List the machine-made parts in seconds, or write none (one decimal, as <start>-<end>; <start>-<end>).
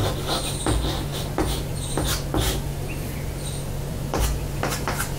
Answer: 1.1-4.2